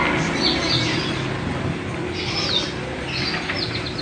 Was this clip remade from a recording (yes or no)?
no